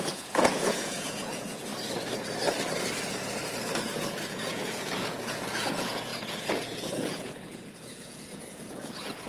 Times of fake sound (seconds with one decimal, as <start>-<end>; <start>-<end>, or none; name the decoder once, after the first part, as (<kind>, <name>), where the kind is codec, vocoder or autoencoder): 0.0-1.7 (vocoder, Vocos); 4.0-9.3